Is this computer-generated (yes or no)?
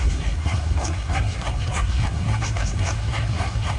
yes